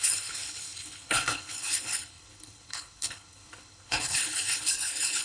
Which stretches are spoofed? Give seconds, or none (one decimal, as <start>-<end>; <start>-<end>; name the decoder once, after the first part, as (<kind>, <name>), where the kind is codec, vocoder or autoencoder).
0.0-5.2 (codec, HILCodec)